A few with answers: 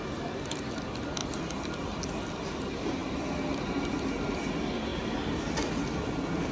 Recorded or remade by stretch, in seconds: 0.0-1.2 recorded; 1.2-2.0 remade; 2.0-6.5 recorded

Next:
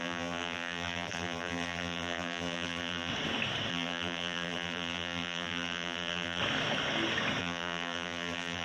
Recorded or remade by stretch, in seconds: 0.0-3.1 remade; 3.1-3.7 recorded; 3.7-6.4 remade; 6.4-7.4 recorded; 7.4-8.6 remade

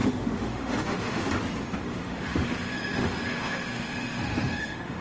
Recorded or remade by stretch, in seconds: 0.0-1.4 remade; 1.4-1.9 recorded; 1.9-5.0 remade

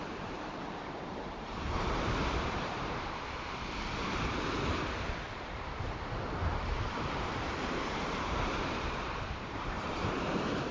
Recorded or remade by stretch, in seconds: 0.0-4.0 remade; 4.0-5.3 recorded; 5.3-10.7 remade